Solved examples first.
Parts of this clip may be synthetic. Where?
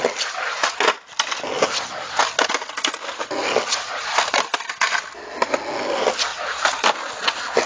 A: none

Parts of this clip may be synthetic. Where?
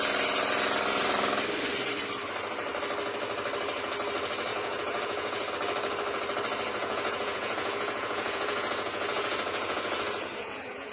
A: 4.5-5.5 (vocoder, Vocos); 6.8-10.9